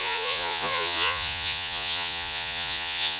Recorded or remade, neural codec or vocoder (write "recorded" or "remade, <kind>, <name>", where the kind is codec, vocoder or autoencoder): remade, vocoder, Vocos